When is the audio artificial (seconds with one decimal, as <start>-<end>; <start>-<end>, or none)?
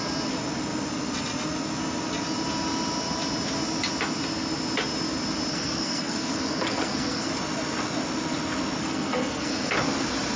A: 5.5-7.3; 8.8-9.7